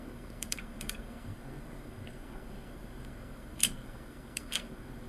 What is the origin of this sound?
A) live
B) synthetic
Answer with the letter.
B